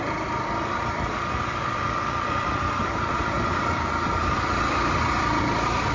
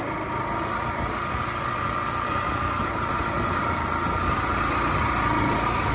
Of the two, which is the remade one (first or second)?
first